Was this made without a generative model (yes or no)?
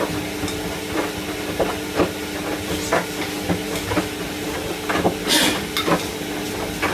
yes